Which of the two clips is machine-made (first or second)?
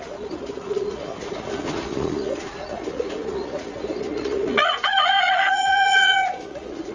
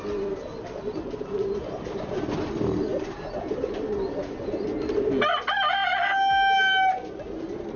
first